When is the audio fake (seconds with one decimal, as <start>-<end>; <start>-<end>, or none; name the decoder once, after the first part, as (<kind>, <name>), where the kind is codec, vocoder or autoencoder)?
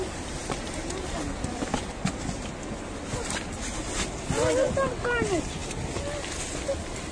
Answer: none